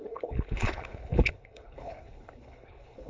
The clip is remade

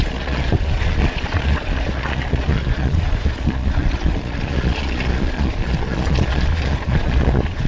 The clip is remade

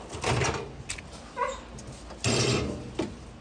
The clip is recorded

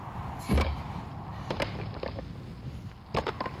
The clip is recorded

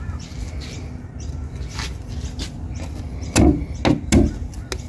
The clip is recorded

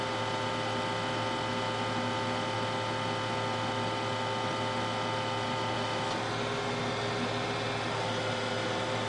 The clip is recorded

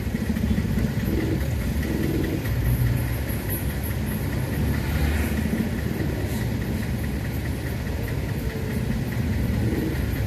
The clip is recorded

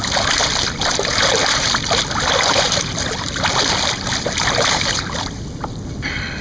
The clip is recorded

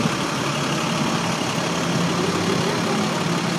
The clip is recorded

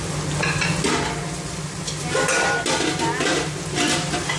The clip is recorded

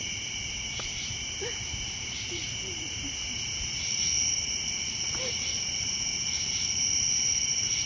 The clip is remade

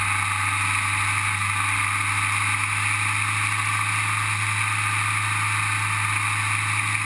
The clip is recorded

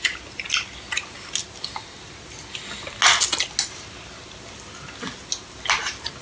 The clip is recorded